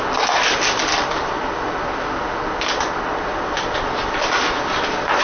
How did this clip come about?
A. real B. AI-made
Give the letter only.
A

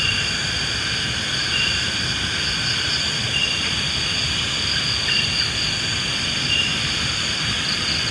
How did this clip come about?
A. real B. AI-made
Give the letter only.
A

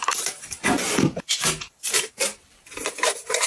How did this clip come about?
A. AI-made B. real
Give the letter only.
A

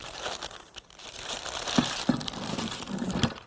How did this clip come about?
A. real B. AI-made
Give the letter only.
B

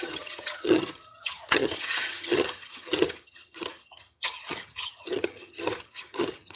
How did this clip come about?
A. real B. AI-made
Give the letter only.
B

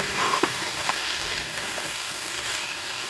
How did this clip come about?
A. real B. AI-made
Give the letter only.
B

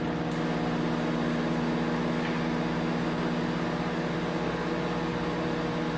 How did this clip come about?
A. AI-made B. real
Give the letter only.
B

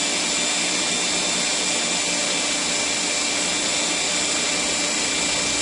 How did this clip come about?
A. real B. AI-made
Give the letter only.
A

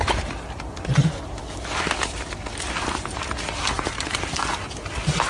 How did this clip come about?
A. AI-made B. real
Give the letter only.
B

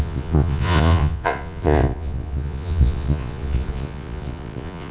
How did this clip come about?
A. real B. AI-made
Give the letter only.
B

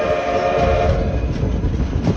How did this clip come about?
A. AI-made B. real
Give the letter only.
B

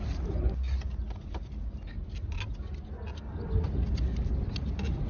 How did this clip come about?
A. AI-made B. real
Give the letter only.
B